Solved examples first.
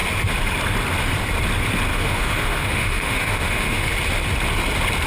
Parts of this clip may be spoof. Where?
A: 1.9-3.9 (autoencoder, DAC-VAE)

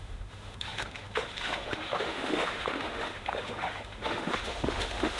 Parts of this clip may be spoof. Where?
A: 0.0-5.2 (autoencoder, DAC-VAE)